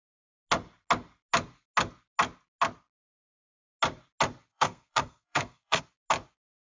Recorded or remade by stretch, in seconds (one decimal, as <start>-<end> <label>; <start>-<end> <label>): 0.0-4.5 recorded; 4.5-5.8 remade; 5.8-6.6 recorded